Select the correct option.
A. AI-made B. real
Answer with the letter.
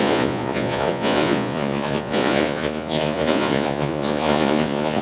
A